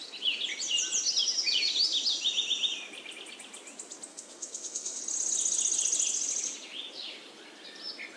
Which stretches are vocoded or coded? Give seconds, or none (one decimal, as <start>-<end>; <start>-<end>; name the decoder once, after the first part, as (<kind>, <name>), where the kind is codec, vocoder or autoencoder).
4.1-5.0 (codec, SNAC)